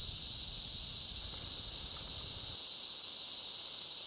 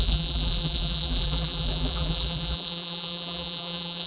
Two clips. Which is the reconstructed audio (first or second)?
second